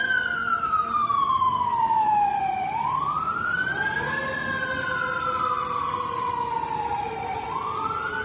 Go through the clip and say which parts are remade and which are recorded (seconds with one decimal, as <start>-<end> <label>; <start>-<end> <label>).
0.0-3.7 remade; 3.7-6.9 recorded; 6.9-8.2 remade